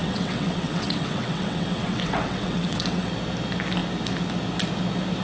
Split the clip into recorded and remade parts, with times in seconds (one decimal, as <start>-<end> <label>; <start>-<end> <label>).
0.0-3.1 remade; 3.1-5.2 recorded